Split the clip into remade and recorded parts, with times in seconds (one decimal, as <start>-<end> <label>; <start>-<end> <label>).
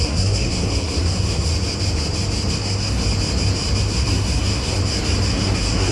0.0-1.5 remade; 1.5-2.5 recorded; 2.5-3.0 remade; 3.0-3.8 recorded; 3.8-4.8 remade; 4.8-5.3 recorded; 5.3-5.9 remade